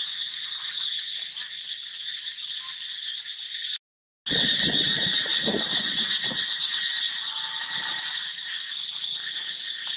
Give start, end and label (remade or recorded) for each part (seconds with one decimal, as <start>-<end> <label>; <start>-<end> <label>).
0.0-10.0 recorded